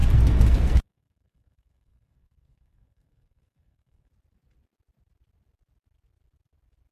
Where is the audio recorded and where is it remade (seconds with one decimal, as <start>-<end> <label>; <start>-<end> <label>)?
0.0-4.1 remade; 4.1-6.9 recorded